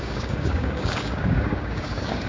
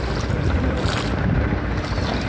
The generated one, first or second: first